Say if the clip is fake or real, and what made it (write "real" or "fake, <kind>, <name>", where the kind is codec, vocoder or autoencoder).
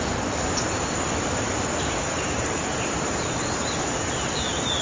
real